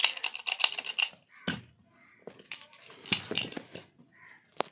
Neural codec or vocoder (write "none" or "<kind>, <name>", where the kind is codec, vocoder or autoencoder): none